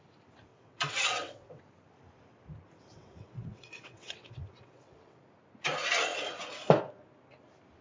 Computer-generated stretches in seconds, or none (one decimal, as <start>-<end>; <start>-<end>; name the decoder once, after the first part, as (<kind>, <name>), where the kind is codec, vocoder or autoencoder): 0.5-1.6 (vocoder, WaveNeXt); 2.9-5.2